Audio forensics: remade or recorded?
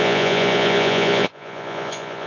remade